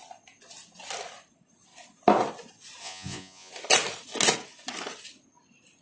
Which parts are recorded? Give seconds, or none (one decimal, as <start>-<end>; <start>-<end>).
0.0-2.8; 3.5-5.8